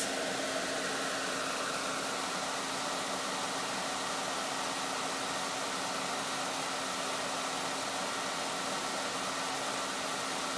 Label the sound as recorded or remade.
recorded